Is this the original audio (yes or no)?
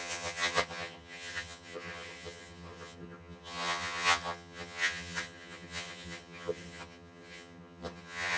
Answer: no